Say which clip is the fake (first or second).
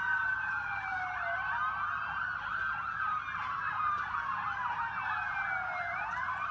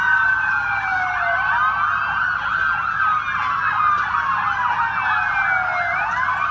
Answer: first